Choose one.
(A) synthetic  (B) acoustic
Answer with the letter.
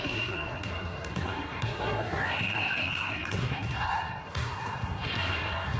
A